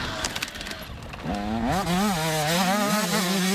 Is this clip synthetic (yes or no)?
no